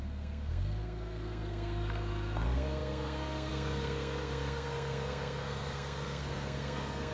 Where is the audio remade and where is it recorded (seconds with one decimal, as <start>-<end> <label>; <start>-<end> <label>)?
0.0-7.1 remade